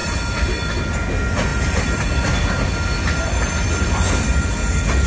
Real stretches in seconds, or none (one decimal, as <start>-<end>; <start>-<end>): 0.0-5.1